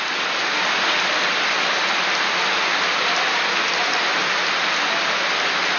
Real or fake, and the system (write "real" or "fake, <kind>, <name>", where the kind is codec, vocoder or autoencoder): real